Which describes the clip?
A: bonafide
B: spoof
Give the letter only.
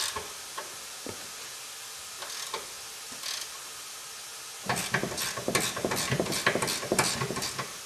A